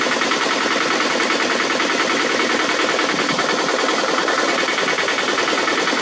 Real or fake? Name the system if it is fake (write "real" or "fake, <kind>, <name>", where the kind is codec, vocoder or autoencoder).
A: real